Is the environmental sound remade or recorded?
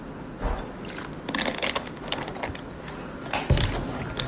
recorded